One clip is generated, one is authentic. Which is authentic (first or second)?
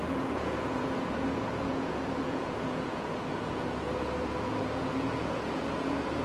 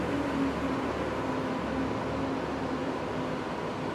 second